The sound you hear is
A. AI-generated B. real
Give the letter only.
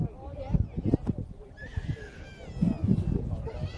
B